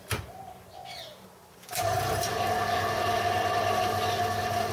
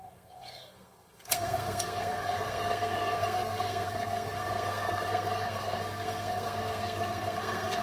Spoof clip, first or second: second